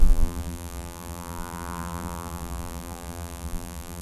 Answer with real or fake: fake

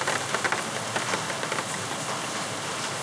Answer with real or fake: real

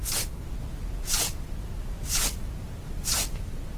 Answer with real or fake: real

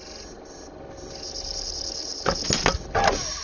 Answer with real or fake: real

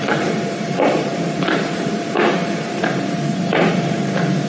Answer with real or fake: fake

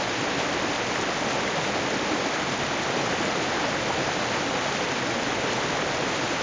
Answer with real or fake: real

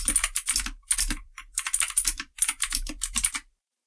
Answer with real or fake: fake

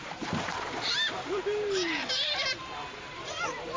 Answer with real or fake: fake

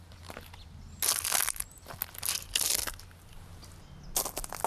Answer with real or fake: real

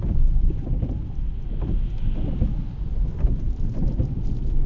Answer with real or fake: fake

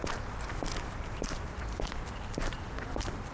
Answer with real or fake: fake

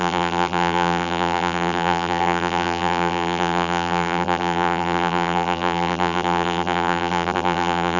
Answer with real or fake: fake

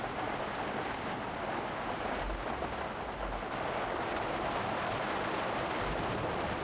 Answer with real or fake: real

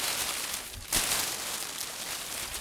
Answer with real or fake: real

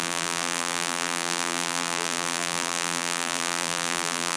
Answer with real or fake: fake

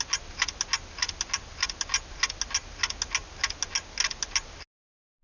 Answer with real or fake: real